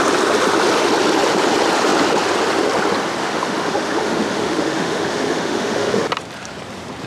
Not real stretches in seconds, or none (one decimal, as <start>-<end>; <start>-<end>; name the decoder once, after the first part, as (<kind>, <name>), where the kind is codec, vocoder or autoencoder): 3.2-6.0 (autoencoder, DAC-VAE)